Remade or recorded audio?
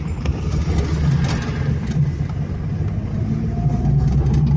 recorded